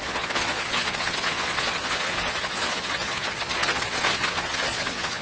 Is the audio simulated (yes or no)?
yes